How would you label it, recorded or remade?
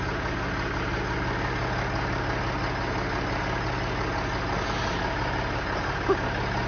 recorded